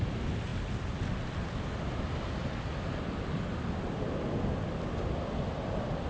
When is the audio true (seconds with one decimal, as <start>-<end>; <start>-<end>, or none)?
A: 0.0-6.1